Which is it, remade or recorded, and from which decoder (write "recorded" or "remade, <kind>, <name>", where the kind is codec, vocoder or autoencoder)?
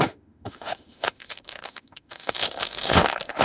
remade, autoencoder, DAC-VAE